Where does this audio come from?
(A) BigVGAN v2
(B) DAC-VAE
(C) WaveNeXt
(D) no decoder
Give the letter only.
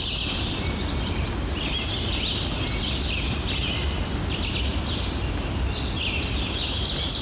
D